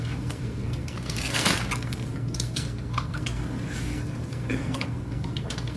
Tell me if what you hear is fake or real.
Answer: fake